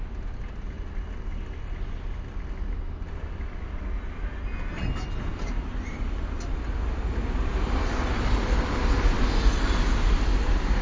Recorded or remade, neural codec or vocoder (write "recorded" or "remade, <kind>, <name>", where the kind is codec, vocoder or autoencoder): recorded